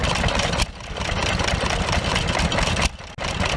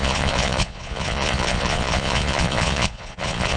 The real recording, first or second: first